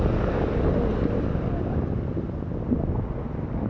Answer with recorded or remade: recorded